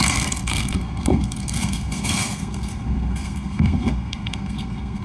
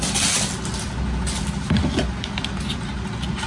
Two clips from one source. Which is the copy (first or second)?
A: first